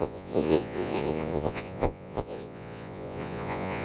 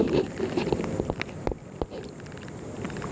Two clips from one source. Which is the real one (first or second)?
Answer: second